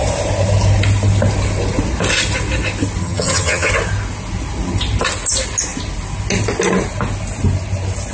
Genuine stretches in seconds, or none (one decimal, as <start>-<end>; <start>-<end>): 0.0-3.0; 3.7-8.1